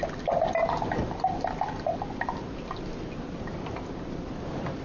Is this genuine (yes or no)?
yes